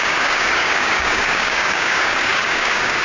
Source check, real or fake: fake